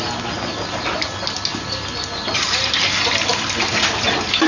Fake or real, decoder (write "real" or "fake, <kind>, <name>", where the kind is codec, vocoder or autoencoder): real